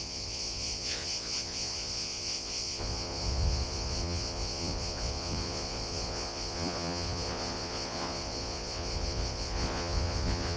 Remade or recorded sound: remade